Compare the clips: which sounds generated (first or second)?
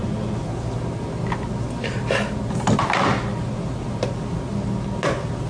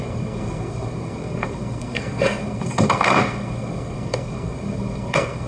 second